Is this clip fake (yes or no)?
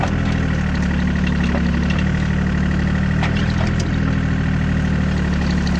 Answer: no